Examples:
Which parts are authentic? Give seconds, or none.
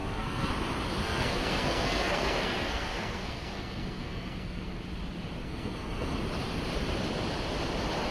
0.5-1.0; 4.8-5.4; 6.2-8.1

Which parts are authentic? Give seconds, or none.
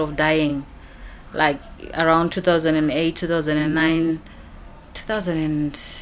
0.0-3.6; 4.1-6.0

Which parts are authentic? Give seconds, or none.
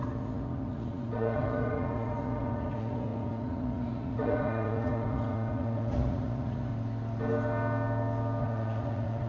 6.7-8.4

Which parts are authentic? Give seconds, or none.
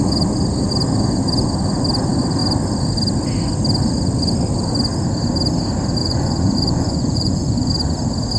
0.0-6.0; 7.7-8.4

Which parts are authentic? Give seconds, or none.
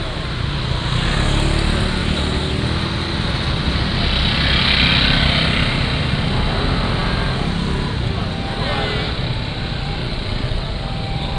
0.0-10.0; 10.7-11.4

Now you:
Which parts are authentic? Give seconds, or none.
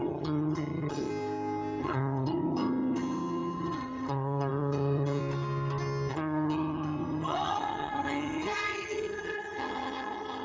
1.1-1.8; 5.2-6.1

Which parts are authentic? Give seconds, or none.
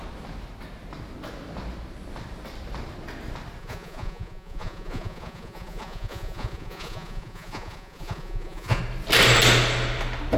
0.0-3.6; 8.8-10.4